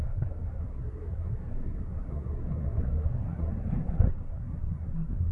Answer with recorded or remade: remade